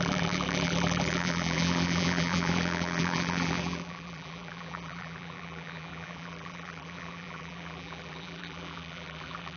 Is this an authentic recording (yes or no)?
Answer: no